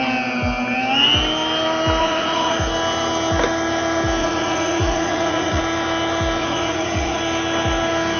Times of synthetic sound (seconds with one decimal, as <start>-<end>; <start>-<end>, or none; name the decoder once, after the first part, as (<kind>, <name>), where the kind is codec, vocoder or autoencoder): 2.0-2.6 (vocoder, Vocos); 4.2-5.6; 6.4-7.2